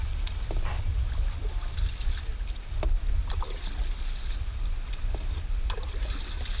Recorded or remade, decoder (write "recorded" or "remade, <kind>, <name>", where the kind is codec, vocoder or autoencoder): recorded